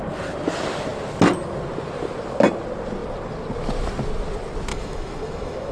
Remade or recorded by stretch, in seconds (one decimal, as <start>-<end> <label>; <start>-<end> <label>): 0.0-4.7 recorded; 4.7-5.7 remade